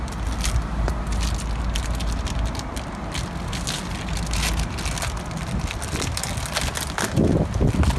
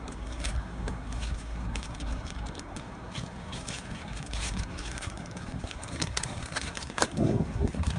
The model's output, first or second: second